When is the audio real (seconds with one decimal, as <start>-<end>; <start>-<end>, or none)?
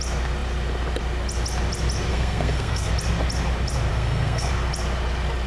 0.0-2.1; 2.9-3.9; 4.5-5.5